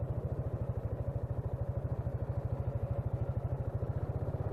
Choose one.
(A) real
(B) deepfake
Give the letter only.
A